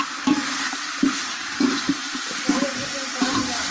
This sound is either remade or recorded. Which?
remade